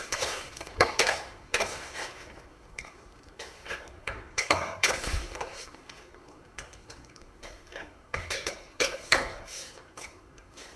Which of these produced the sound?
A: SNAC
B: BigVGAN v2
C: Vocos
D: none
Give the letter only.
A